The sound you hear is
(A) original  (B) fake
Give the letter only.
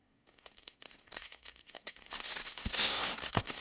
B